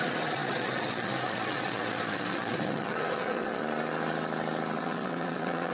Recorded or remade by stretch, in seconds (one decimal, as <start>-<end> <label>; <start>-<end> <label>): 0.0-3.6 remade; 3.6-4.8 recorded; 4.8-5.7 remade